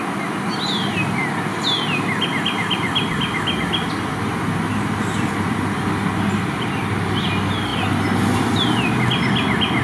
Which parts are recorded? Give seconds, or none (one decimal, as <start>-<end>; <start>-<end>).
0.0-9.8